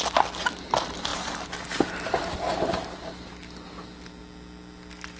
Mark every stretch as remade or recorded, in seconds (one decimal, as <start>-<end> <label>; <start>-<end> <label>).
0.0-5.2 recorded